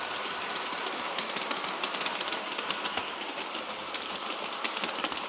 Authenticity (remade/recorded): recorded